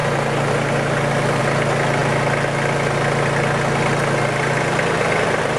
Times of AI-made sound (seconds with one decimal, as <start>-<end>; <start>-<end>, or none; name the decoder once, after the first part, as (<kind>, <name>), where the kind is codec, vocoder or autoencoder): none